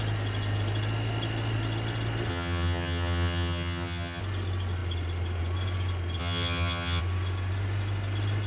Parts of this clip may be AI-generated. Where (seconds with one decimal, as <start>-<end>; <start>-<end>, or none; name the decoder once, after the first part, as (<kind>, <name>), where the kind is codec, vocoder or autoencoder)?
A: 2.3-4.2 (vocoder, HiFi-GAN); 6.2-7.0